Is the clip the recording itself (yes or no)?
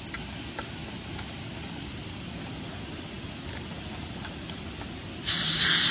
yes